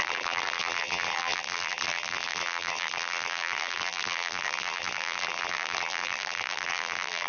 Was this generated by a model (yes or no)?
yes